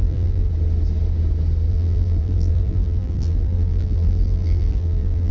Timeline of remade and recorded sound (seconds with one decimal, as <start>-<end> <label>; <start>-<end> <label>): 0.0-0.5 remade; 0.5-1.7 recorded; 1.7-5.3 remade